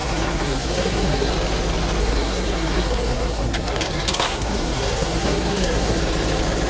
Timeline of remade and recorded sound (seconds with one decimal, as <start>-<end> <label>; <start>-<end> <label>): 0.0-1.3 remade; 1.3-2.0 recorded; 2.0-6.0 remade; 6.0-6.7 recorded